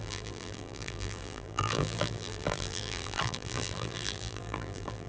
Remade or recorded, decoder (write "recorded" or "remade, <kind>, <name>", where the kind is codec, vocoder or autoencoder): remade, vocoder, BigVGAN v2